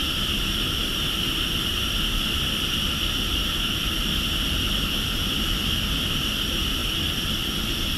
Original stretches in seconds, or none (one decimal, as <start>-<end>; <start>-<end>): 0.9-1.7; 5.2-6.8; 7.6-8.0